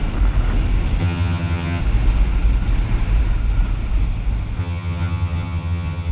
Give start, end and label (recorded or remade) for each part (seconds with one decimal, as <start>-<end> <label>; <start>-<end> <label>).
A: 0.0-1.0 recorded; 1.0-1.8 remade; 1.8-4.6 recorded; 4.6-6.1 remade